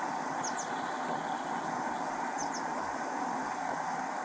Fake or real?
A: real